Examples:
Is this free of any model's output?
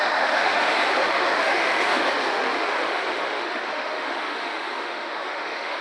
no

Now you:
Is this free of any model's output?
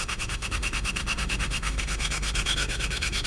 no